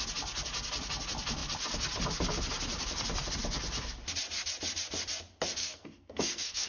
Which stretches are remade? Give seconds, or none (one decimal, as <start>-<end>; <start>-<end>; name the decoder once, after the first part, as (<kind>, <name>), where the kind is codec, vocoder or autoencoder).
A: 5.6-6.7 (codec, SNAC)